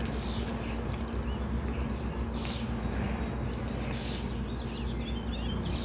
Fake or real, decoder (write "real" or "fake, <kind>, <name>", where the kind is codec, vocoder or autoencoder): real